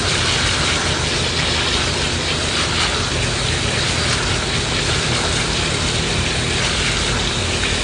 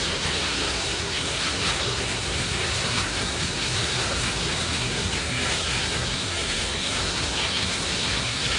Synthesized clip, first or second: second